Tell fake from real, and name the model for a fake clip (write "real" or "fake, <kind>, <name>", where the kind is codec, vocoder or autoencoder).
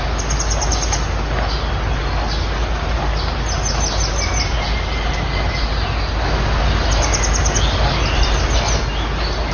real